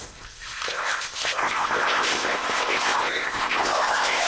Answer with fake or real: fake